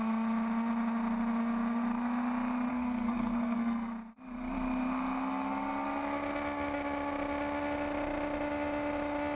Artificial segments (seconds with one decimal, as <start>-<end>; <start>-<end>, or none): 2.7-3.9